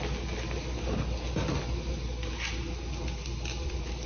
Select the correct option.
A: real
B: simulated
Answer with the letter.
A